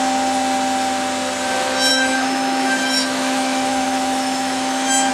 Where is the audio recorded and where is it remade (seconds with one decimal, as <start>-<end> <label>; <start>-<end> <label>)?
0.0-1.9 recorded; 1.9-5.1 remade